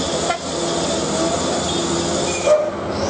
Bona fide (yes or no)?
yes